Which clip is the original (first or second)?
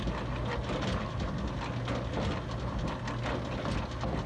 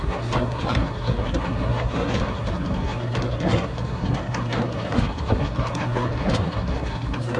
first